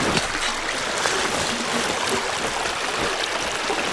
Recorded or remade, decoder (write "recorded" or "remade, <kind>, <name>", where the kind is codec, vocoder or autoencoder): recorded